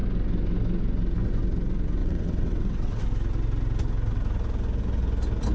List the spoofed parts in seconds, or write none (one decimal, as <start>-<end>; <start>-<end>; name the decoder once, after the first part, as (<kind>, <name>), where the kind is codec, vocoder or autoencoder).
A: 2.0-3.0 (vocoder, WaveNeXt)